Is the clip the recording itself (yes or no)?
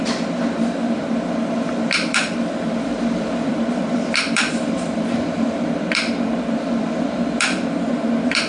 no